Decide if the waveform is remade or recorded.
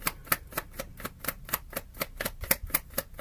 recorded